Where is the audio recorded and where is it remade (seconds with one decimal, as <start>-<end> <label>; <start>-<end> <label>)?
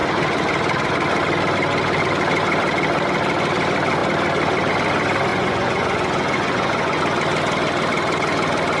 0.0-5.3 recorded; 5.3-7.0 remade; 7.0-8.8 recorded